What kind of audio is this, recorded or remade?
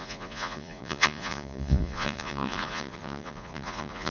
remade